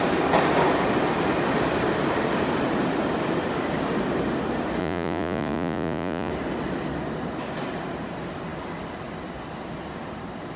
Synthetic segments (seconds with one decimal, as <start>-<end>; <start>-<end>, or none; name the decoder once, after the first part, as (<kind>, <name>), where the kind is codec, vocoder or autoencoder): 4.8-6.3 (vocoder, Vocos)